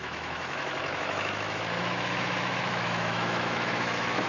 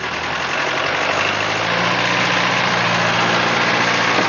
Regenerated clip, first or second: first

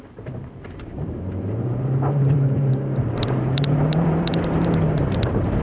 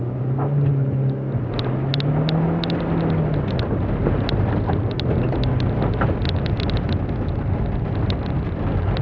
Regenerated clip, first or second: first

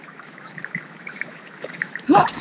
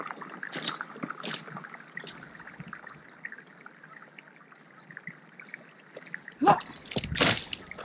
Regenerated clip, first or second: first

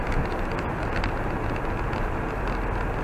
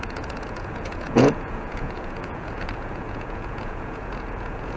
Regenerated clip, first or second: second